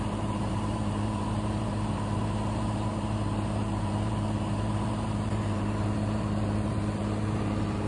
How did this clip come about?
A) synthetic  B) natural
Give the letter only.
A